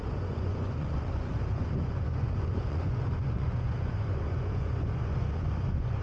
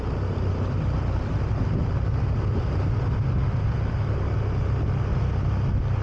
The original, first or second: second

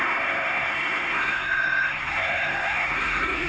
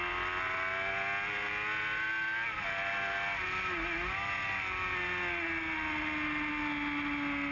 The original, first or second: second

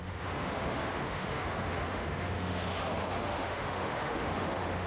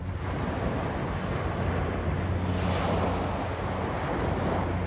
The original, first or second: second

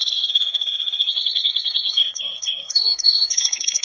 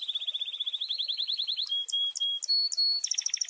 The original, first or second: second